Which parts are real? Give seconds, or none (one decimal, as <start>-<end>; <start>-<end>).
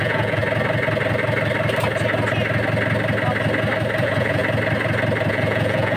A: 0.4-4.0; 4.4-5.3